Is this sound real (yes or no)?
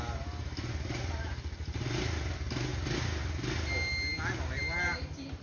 yes